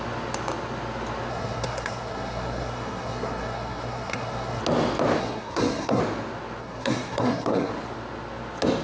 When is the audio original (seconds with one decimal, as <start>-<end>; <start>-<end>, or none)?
0.0-1.3; 4.6-5.2; 6.0-6.6; 7.7-8.8